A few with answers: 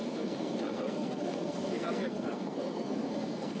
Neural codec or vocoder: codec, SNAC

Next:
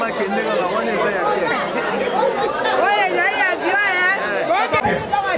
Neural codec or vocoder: none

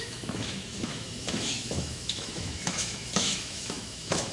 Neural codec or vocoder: autoencoder, DAC-VAE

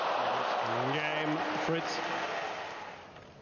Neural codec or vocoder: none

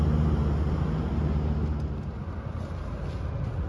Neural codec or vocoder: none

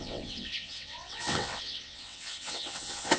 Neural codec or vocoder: vocoder, WaveNeXt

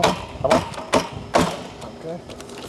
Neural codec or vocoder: none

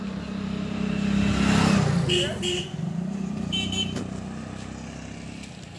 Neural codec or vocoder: none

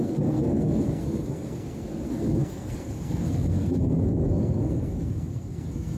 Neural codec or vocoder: codec, SNAC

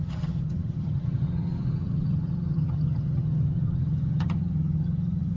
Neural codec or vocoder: vocoder, HiFi-GAN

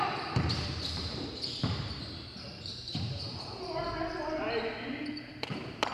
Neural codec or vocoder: vocoder, BigVGAN v2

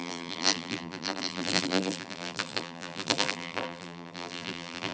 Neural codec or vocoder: vocoder, BigVGAN v2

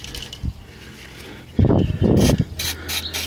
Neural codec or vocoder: none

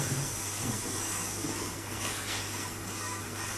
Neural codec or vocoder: codec, SNAC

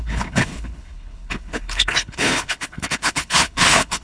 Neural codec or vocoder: codec, HILCodec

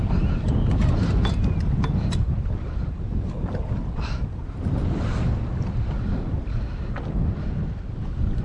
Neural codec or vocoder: none